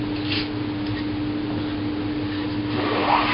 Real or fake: real